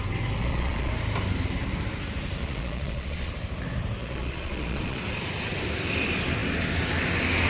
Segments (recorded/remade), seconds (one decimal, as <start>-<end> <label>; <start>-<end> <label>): 0.0-0.4 recorded; 0.4-0.9 remade; 0.9-2.4 recorded; 2.4-3.3 remade; 3.3-4.0 recorded; 4.0-5.0 remade; 5.0-7.5 recorded